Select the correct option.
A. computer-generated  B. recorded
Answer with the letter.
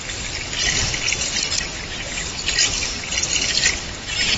B